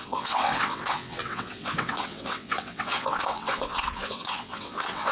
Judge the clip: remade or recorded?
remade